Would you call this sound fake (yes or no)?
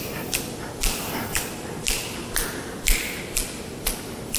no